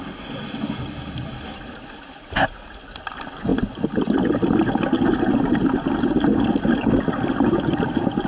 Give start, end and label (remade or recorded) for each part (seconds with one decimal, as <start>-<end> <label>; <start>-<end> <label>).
0.0-8.3 recorded